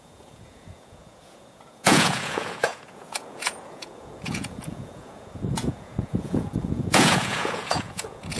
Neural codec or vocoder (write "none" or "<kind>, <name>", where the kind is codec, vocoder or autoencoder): vocoder, Vocos